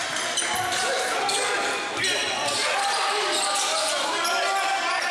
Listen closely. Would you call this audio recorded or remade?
recorded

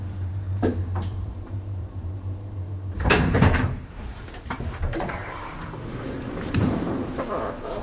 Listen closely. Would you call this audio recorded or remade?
remade